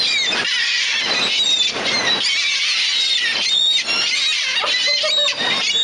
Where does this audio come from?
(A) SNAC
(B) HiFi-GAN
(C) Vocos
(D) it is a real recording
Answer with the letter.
D